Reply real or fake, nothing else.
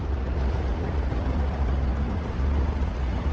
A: fake